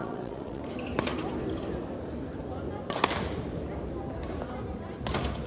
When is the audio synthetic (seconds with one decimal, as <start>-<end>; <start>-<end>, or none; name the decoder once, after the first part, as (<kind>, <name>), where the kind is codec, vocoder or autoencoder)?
0.0-0.6 (vocoder, WaveNeXt)